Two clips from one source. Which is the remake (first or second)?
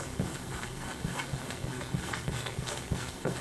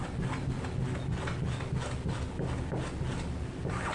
first